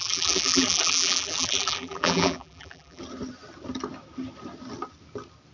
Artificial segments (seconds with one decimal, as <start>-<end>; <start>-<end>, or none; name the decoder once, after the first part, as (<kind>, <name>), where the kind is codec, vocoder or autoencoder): 0.0-3.0 (vocoder, BigVGAN v2)